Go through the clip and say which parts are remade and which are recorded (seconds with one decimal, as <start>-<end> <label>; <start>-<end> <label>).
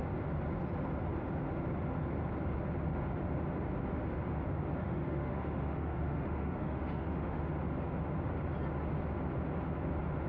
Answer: 0.0-4.8 recorded; 4.8-7.4 remade; 7.4-10.3 recorded